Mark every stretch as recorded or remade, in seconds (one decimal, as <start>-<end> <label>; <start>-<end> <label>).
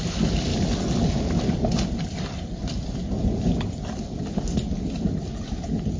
0.0-6.0 recorded